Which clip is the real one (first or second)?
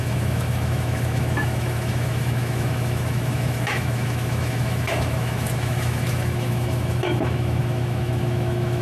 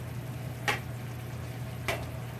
second